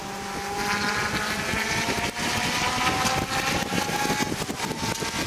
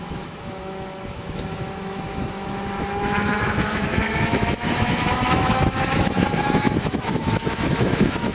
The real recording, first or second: first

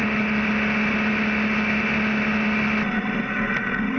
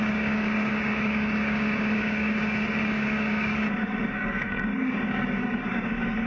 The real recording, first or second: first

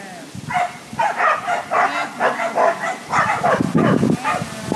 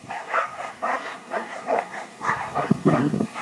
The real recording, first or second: first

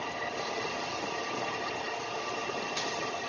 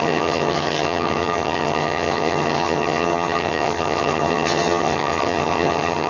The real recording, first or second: first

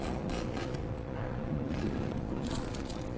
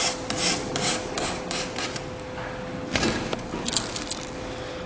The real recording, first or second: second